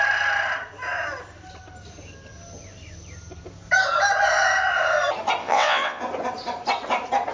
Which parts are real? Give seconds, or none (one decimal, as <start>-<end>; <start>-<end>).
0.0-5.4; 6.0-7.3